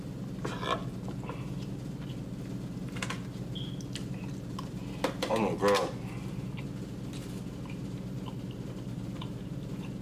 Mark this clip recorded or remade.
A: recorded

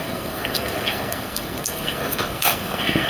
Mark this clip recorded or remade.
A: remade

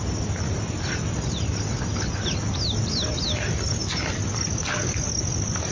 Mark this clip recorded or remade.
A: recorded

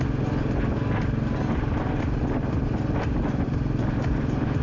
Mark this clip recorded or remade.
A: recorded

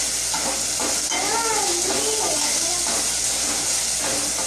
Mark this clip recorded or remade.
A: recorded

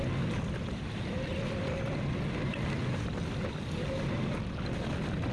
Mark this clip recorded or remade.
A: recorded